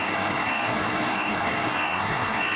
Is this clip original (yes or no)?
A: no